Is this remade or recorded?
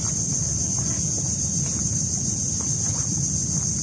recorded